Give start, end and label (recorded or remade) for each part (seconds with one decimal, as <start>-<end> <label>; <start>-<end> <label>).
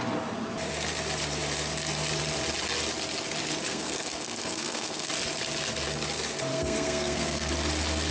0.0-3.7 recorded; 3.7-5.1 remade; 5.1-6.5 recorded; 6.5-7.5 remade; 7.5-8.1 recorded